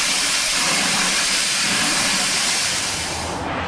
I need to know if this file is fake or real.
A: fake